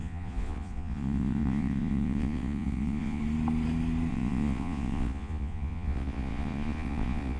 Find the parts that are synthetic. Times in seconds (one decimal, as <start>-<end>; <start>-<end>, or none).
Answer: 0.0-3.2; 4.1-7.4